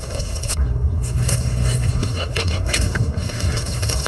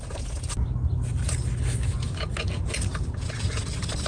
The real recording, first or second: second